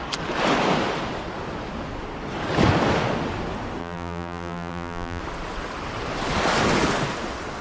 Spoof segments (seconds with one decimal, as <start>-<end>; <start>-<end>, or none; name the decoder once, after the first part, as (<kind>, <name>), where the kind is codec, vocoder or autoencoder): 3.8-5.2 (vocoder, BigVGAN v2)